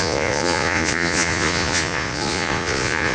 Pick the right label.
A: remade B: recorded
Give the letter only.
A